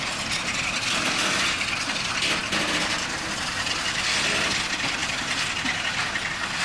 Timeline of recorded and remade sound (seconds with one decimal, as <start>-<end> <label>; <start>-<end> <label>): 0.0-6.6 recorded